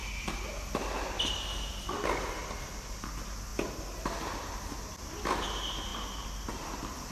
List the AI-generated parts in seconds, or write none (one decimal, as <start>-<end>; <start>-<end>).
none